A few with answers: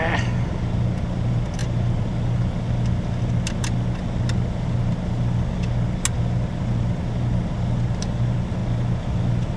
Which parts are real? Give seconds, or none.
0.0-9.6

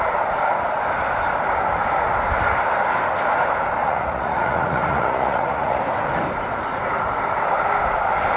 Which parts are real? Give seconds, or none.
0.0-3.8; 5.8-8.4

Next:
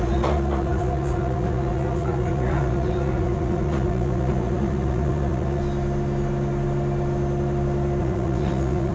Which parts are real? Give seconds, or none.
5.6-8.0

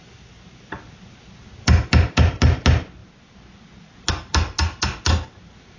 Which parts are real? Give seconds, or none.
0.0-5.8

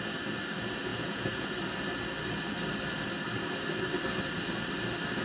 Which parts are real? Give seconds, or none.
0.0-0.9; 1.5-5.2